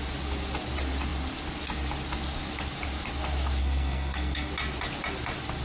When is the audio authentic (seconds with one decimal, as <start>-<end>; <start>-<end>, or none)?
0.0-3.6; 4.5-5.6